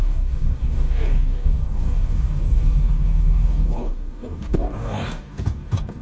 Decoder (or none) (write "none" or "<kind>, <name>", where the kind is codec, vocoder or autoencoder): codec, DAC